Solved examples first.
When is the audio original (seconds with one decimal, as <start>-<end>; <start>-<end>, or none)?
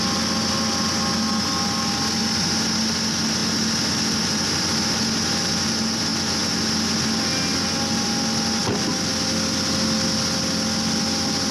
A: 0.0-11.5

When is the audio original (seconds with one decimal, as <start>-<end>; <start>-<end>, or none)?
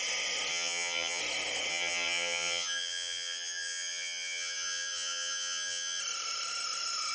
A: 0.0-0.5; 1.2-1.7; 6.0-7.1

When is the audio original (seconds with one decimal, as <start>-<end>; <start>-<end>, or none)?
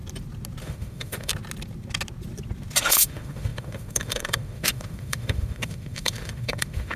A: 0.0-0.6; 1.3-2.8